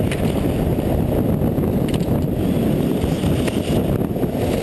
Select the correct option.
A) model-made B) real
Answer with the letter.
B